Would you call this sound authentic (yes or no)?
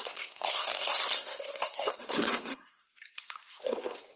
no